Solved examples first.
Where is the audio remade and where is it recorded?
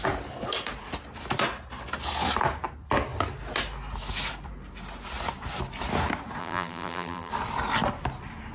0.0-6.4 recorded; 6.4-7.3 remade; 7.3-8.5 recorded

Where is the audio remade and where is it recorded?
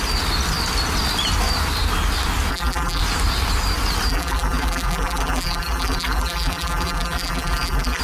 0.0-2.5 recorded; 2.5-3.0 remade; 3.0-4.1 recorded; 4.1-8.0 remade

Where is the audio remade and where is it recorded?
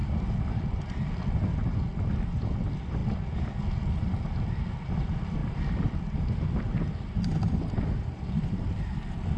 0.0-0.6 recorded; 0.6-3.0 remade; 3.0-5.0 recorded; 5.0-9.4 remade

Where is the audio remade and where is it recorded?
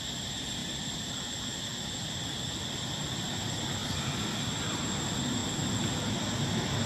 0.0-6.9 recorded